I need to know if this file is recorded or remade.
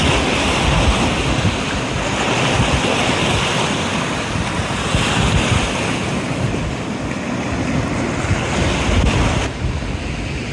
recorded